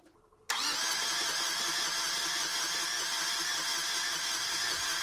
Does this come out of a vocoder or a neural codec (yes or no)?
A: no